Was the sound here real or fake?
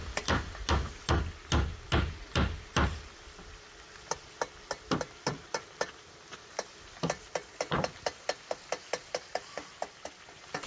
real